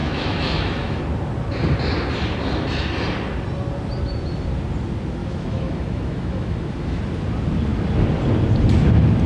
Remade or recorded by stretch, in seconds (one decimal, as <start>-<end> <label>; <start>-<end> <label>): 0.0-1.0 remade; 1.0-5.2 recorded; 5.2-7.0 remade; 7.0-9.3 recorded

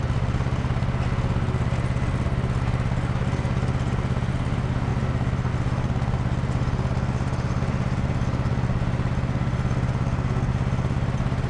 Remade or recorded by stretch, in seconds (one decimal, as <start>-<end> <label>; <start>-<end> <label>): 0.0-11.5 recorded

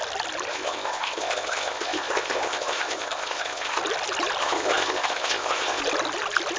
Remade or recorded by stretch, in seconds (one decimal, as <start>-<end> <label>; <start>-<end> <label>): 0.0-0.5 recorded; 0.5-3.8 remade; 3.8-4.4 recorded; 4.4-5.8 remade; 5.8-6.6 recorded

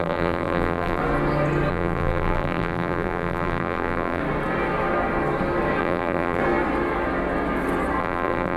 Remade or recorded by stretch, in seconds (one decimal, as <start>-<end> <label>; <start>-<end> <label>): 0.0-1.0 remade; 1.0-1.7 recorded; 1.7-4.2 remade; 4.2-5.8 recorded; 5.8-6.4 remade; 6.4-8.0 recorded; 8.0-8.6 remade

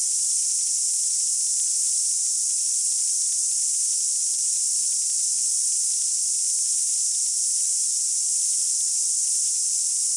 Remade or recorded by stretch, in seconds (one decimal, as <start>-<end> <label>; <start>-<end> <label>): 0.0-10.2 recorded